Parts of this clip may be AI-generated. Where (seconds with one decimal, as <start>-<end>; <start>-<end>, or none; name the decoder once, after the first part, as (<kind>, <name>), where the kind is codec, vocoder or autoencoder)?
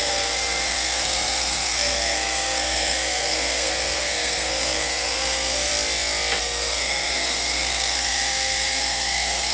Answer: 0.0-5.7 (codec, SNAC); 6.4-9.5